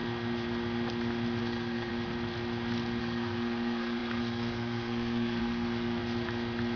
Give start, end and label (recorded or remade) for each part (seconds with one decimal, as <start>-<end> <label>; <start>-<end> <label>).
0.0-1.4 recorded; 1.4-1.9 remade; 1.9-3.0 recorded; 3.0-6.0 remade; 6.0-6.8 recorded